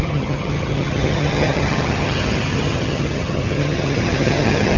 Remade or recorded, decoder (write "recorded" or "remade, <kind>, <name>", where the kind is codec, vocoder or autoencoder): remade, vocoder, HiFi-GAN